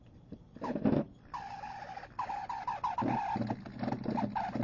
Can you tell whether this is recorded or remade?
recorded